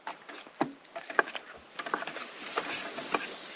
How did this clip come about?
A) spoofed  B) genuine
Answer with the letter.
B